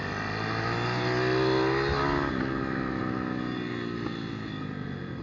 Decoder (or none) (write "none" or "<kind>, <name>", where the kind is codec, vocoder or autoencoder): none